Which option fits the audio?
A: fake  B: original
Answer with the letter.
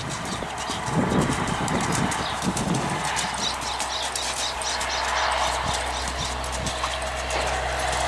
B